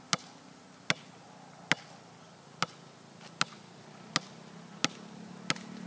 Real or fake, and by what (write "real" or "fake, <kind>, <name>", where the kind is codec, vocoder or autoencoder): real